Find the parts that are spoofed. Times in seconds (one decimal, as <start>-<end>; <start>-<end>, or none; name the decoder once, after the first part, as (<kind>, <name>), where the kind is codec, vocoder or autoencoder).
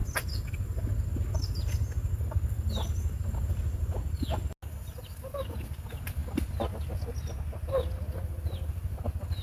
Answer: none